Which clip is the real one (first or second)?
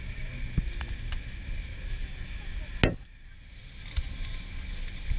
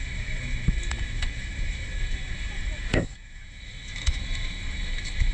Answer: first